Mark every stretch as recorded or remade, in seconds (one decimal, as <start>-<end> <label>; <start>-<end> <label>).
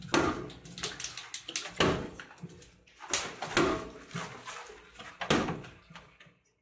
0.0-6.6 recorded